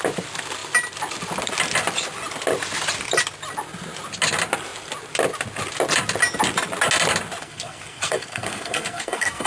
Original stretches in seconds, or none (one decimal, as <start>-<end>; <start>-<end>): 0.0-7.4

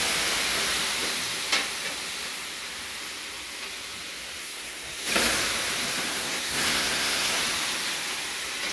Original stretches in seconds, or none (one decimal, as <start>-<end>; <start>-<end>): 0.0-4.4; 5.1-6.1; 7.4-8.7

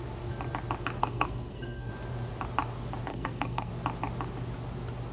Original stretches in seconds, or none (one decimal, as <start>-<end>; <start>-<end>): 0.0-1.0; 1.9-3.1; 3.7-5.1